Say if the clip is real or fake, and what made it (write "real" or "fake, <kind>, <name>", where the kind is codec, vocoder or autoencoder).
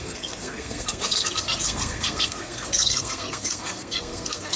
fake, codec, SNAC